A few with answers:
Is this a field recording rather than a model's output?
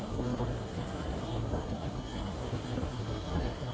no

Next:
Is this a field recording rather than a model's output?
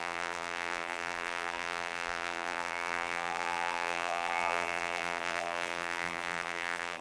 no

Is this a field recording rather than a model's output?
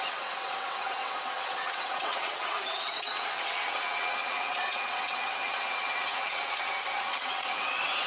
no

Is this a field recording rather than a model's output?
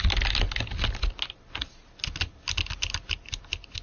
yes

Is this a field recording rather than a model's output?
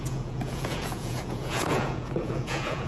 no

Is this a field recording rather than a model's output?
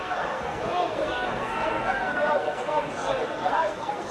no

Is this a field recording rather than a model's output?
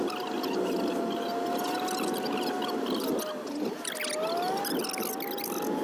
yes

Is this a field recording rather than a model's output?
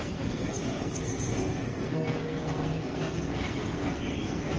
no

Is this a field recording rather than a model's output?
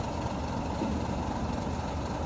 yes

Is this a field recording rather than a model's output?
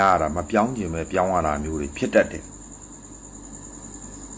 yes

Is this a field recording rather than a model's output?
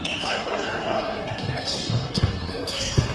no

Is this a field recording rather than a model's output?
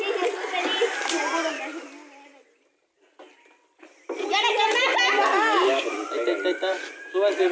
yes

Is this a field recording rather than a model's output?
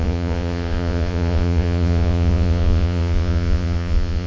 no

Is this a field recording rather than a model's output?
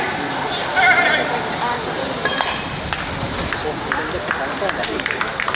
yes